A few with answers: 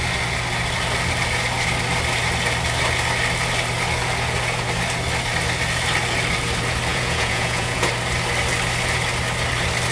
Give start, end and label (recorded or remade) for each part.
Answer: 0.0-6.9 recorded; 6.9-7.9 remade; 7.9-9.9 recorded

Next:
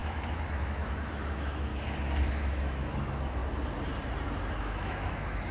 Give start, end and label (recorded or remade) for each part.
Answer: 0.0-1.7 remade; 1.7-2.4 recorded; 2.4-3.4 remade; 3.4-4.6 recorded; 4.6-5.5 remade

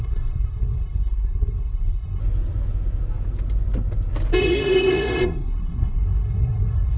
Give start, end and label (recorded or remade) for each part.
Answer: 0.0-2.2 remade; 2.2-4.4 recorded; 4.4-7.0 remade

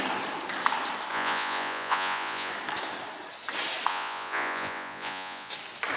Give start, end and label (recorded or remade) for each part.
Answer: 0.0-1.1 recorded; 1.1-2.5 remade; 2.5-3.9 recorded; 3.9-5.5 remade; 5.5-6.0 recorded

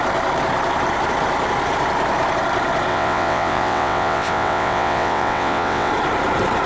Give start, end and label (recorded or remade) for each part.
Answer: 0.0-2.9 recorded; 2.9-5.9 remade; 5.9-6.7 recorded

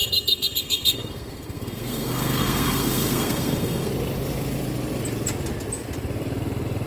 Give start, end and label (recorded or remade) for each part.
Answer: 0.0-3.9 remade; 3.9-6.9 recorded

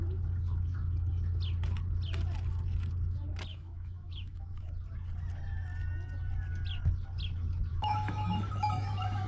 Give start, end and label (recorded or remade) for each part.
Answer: 0.0-3.5 recorded; 3.5-4.7 remade; 4.7-7.7 recorded; 7.7-9.3 remade

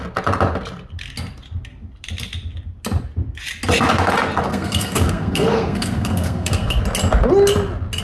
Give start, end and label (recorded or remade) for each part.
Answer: 0.0-4.5 recorded; 4.5-6.8 remade; 6.8-8.0 recorded